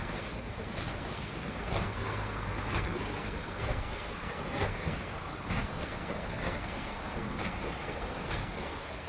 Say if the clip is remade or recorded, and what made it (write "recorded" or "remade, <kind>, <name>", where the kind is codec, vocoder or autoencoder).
remade, codec, SNAC